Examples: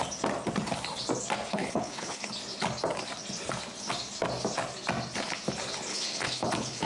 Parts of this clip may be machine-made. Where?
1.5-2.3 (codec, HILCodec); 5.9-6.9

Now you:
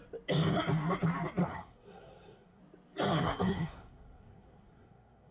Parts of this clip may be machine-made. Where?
1.4-2.6 (codec, SNAC); 3.1-5.3

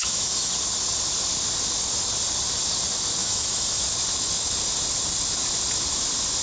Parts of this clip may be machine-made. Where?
0.0-0.5 (autoencoder, DAC-VAE); 3.2-3.8

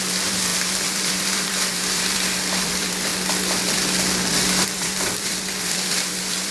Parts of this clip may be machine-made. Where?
0.0-3.1 (vocoder, BigVGAN v2); 4.3-6.5

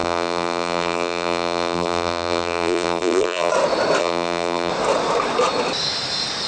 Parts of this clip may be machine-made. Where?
0.0-3.5 (vocoder, BigVGAN v2); 4.0-4.7

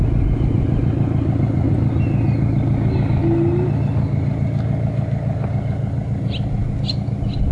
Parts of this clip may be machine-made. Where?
none